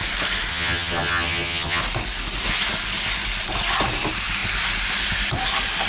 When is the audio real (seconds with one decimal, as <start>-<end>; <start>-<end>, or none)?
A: 0.0-0.5; 1.8-5.9